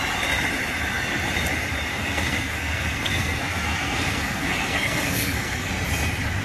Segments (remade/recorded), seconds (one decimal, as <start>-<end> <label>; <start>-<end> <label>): 0.0-1.9 recorded; 1.9-5.7 remade; 5.7-6.4 recorded